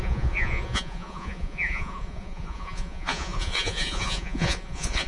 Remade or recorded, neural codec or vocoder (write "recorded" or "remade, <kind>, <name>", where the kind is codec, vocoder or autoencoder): remade, vocoder, Vocos